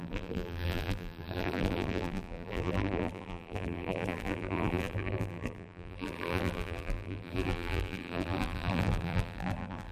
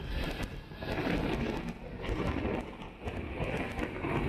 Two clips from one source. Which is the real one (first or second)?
second